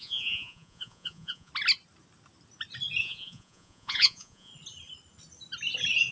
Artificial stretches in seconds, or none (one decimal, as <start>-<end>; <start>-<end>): 0.0-1.5; 3.0-4.5

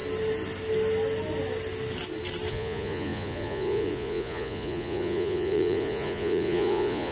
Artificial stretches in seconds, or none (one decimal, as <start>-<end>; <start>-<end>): 2.5-7.1